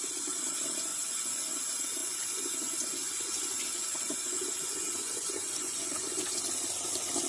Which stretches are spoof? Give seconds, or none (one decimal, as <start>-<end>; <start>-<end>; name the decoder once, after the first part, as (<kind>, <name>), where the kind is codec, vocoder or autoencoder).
0.9-1.5 (vocoder, Vocos); 2.0-6.4